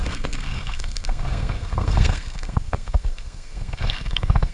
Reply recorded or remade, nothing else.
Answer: remade